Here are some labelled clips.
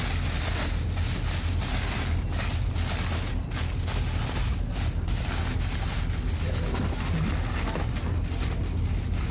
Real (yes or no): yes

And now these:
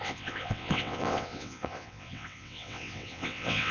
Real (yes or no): no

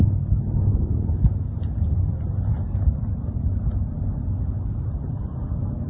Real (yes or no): yes